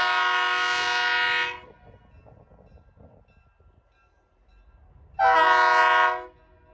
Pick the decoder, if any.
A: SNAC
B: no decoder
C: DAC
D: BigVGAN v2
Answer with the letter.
B